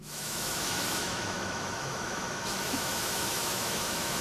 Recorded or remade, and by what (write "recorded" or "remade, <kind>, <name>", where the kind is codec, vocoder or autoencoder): remade, autoencoder, DAC-VAE